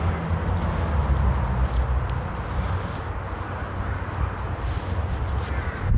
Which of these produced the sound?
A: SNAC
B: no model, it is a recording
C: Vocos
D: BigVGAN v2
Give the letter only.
B